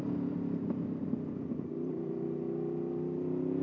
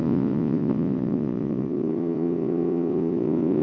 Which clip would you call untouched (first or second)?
first